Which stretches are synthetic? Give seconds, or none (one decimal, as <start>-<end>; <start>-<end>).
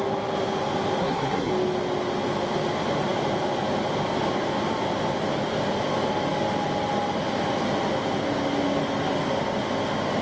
1.0-1.5